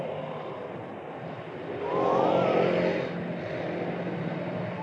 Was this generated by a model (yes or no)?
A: no